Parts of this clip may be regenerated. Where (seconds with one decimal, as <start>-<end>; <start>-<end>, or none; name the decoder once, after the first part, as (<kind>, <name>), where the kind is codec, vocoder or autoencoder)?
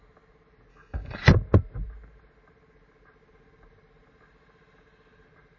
0.7-1.3 (codec, DAC)